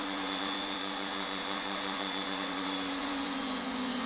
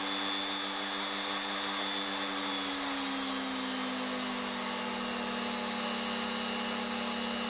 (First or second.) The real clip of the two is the second